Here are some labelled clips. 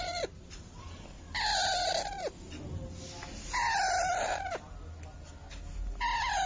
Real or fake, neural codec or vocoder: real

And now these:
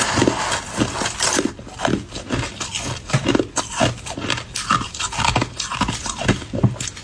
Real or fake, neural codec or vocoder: real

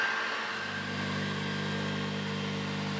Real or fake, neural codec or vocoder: real